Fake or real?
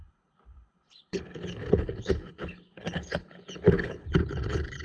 fake